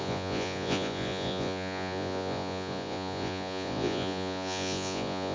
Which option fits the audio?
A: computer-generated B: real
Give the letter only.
A